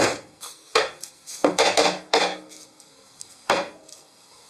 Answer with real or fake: fake